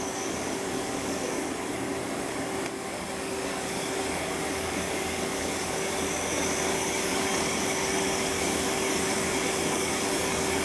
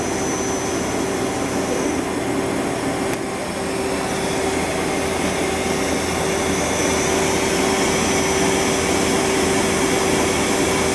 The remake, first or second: first